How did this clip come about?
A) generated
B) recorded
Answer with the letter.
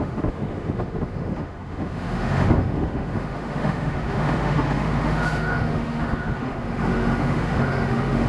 A